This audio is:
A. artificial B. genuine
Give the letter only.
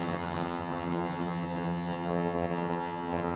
A